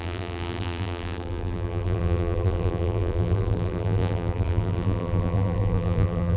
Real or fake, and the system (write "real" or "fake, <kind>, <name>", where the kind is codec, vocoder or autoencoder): fake, vocoder, BigVGAN v2